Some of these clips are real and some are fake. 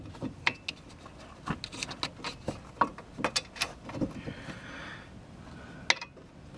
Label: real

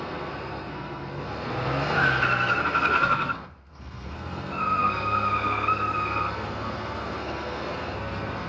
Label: fake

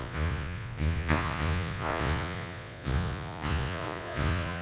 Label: fake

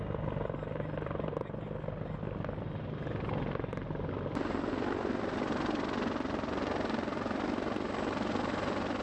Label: real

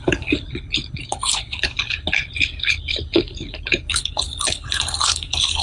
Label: fake